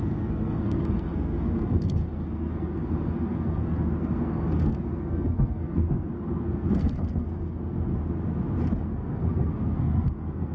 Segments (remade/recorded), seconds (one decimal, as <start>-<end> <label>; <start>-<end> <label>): 0.0-7.9 remade; 7.9-8.8 recorded; 8.8-10.5 remade